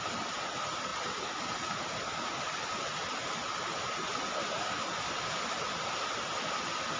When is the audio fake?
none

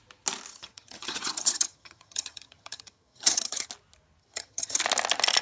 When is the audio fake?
0.5-3.7 (vocoder, HiFi-GAN); 4.2-4.8

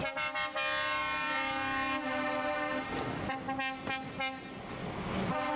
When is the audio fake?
none

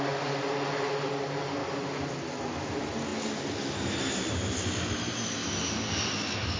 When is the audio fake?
none